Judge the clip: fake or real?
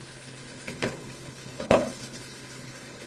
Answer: fake